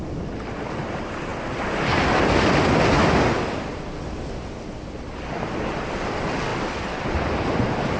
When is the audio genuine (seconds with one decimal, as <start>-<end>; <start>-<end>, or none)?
0.0-8.0